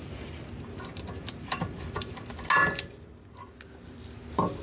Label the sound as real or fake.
real